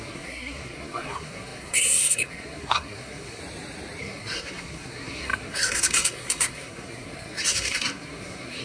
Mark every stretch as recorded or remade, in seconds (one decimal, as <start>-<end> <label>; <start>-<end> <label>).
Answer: 0.0-3.4 remade; 3.4-4.0 recorded; 4.0-8.6 remade